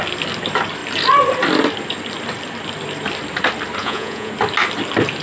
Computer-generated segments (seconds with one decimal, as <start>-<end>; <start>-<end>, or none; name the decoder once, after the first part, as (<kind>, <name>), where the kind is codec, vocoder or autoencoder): 3.8-4.3 (vocoder, Vocos)